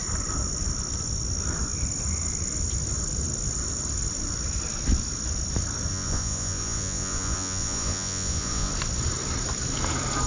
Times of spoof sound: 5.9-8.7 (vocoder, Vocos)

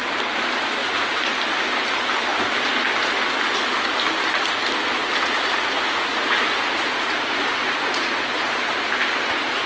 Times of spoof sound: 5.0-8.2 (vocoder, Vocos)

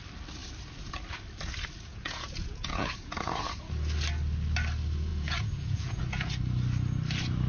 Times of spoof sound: 1.9-3.7 (vocoder, Vocos); 5.1-6.3